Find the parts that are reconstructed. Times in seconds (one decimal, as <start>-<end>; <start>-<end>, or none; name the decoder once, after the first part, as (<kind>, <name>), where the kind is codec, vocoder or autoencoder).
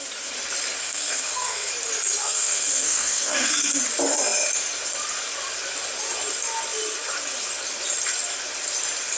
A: 0.8-1.7 (codec, SNAC); 2.2-3.7